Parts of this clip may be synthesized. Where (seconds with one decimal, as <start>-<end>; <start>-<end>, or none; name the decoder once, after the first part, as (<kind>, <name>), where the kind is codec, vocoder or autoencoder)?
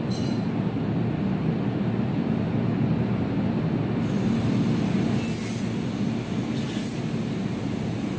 none